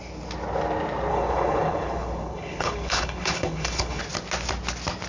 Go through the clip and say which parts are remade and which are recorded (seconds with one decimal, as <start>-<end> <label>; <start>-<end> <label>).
0.0-1.1 recorded; 1.1-4.0 remade; 4.0-5.1 recorded